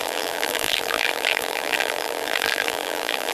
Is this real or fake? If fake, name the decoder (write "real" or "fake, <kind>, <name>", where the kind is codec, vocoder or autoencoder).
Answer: fake, vocoder, BigVGAN v2